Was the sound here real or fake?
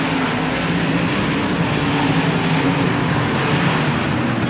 real